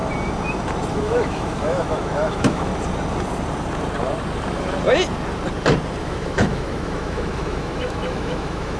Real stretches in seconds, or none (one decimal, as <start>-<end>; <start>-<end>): 0.0-0.9; 2.7-6.0